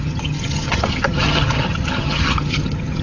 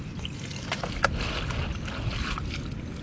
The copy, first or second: first